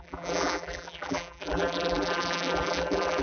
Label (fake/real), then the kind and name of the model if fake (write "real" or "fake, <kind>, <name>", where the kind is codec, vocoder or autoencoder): fake, vocoder, BigVGAN v2